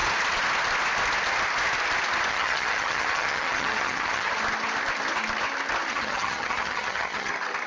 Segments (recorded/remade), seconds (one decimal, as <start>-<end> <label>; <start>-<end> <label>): 0.0-2.3 recorded; 2.3-4.3 remade; 4.3-5.9 recorded; 5.9-7.3 remade; 7.3-7.7 recorded